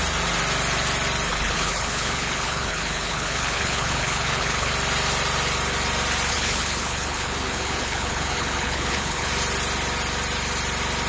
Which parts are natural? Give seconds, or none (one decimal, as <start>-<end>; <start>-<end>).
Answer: 0.0-1.3; 4.7-6.3; 9.3-11.1